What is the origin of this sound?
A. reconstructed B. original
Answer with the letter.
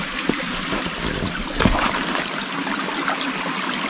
B